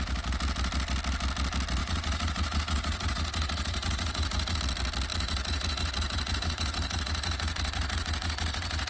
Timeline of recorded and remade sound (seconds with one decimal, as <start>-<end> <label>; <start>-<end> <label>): 0.0-1.8 recorded; 1.8-4.6 remade; 4.6-5.1 recorded; 5.1-8.9 remade